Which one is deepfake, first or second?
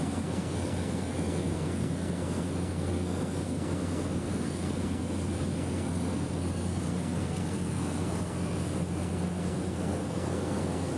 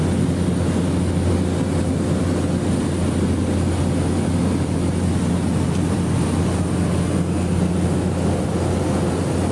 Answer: first